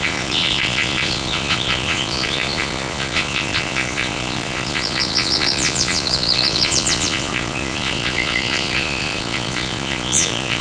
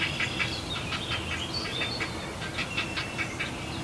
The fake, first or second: first